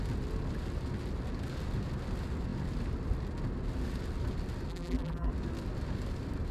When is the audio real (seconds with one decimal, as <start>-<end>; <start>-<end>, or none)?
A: 0.0-4.7; 5.3-6.5